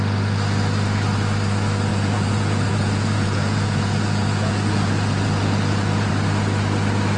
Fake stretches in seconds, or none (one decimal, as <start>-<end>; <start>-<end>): 1.9-6.1

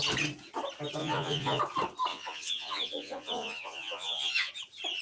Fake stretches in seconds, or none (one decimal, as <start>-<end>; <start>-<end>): 1.0-1.6; 2.1-4.5

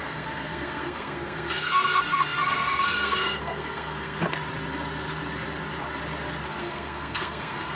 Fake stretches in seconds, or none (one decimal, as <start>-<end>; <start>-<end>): 0.0-4.2; 6.6-7.8

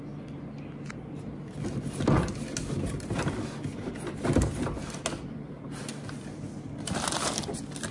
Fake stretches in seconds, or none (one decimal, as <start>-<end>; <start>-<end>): none